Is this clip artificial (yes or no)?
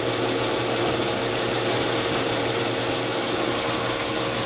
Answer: no